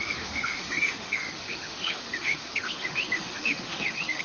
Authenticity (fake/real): fake